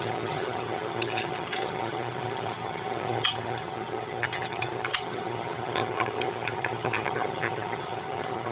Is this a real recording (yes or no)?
no